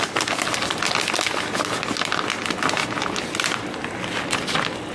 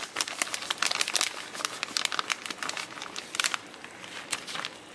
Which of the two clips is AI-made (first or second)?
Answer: second